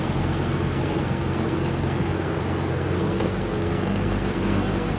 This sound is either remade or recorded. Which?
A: remade